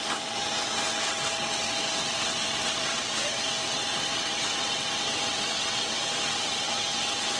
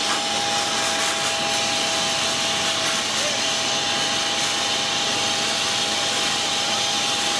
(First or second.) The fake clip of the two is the first